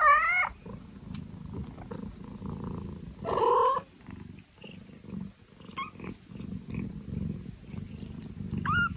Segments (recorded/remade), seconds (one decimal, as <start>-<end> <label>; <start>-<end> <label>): 0.0-9.0 recorded